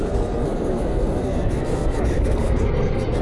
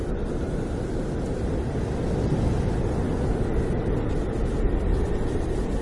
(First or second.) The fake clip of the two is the first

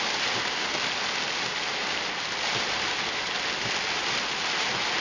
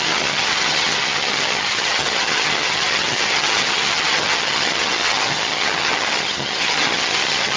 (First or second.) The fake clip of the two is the second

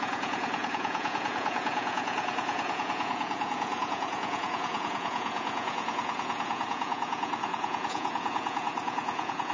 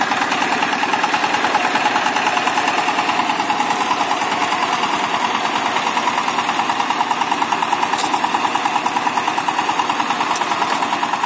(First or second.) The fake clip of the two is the first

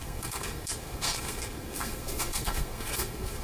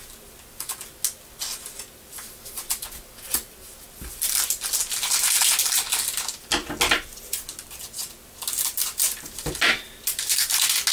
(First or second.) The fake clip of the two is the first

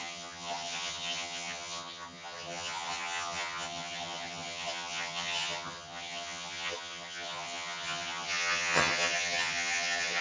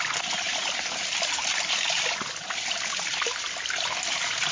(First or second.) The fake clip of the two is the first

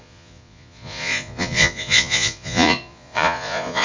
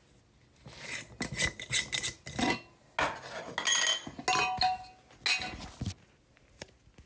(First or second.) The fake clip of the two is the first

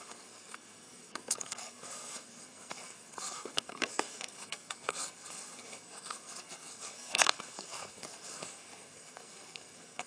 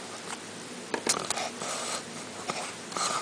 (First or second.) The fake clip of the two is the first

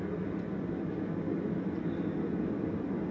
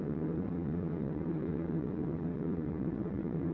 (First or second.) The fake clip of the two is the second